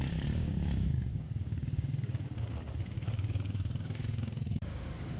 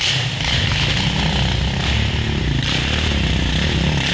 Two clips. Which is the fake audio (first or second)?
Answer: first